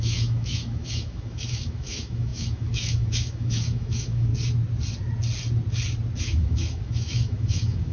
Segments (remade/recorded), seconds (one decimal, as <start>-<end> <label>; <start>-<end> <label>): 0.0-4.3 remade; 4.3-6.2 recorded; 6.2-7.9 remade